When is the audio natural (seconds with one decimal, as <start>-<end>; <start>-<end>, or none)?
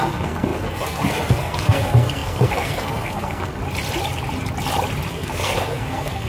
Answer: 3.6-5.1